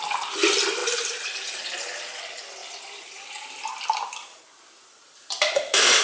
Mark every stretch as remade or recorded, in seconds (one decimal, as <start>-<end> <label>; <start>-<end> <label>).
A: 0.0-6.0 remade